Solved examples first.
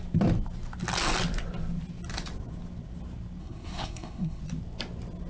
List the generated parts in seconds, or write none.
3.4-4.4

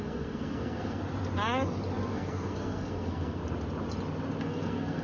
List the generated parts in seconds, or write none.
0.0-1.0; 2.1-3.4; 4.4-5.0

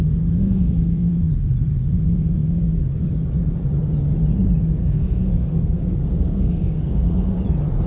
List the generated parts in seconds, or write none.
0.4-1.3; 4.8-7.4

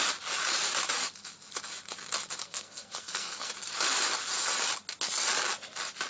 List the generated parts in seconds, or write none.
2.4-3.5

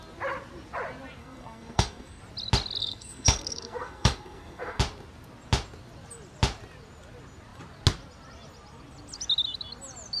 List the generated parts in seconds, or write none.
1.2-2.2; 2.8-4.8

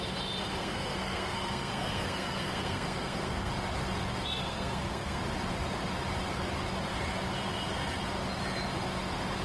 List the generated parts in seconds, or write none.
0.6-3.5; 4.4-5.2

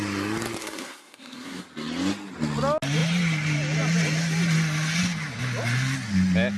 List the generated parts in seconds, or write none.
0.6-1.6

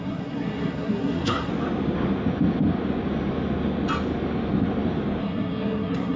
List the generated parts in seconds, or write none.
0.0-1.5; 5.2-6.2